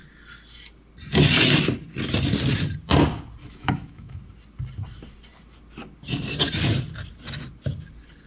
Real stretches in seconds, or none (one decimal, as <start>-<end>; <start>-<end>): 0.0-3.4; 4.2-8.3